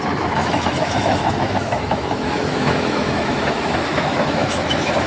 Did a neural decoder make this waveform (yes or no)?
yes